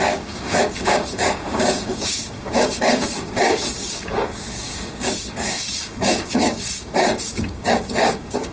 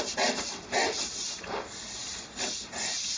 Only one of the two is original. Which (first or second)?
second